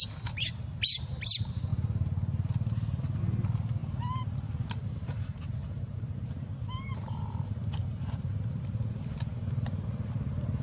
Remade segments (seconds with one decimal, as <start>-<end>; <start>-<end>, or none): 3.8-8.6